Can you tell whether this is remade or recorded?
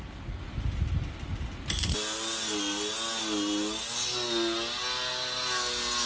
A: recorded